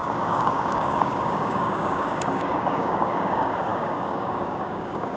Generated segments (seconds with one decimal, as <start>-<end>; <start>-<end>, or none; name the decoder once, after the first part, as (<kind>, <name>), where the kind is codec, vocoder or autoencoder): 0.0-5.2 (codec, DAC)